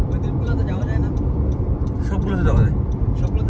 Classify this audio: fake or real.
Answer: fake